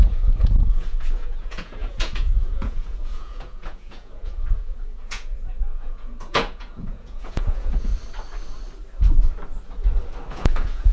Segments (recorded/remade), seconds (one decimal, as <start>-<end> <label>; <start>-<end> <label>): 0.0-7.9 remade; 7.9-10.3 recorded; 10.3-10.9 remade